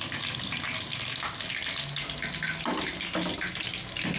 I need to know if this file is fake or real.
real